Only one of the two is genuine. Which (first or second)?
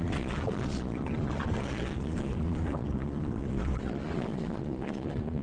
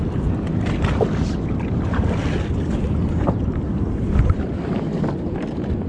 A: second